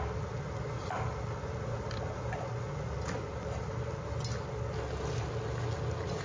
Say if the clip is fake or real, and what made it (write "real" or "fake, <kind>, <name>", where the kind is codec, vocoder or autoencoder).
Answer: real